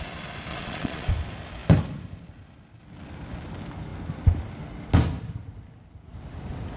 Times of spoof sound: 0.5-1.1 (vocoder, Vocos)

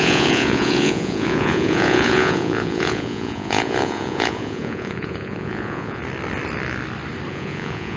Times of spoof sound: 0.0-6.0 (vocoder, Vocos); 7.3-8.0

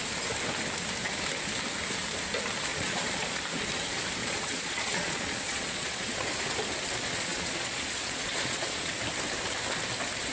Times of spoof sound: 2.7-3.4 (vocoder, Vocos); 4.2-6.2; 7.0-8.9

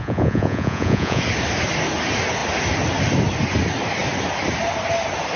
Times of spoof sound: 0.0-1.2 (vocoder, Vocos)

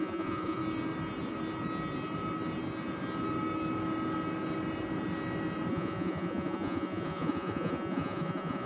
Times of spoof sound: 0.0-0.6 (vocoder, Vocos); 5.7-8.7